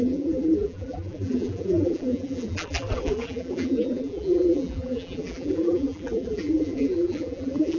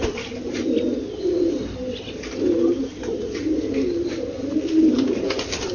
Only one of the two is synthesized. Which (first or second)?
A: first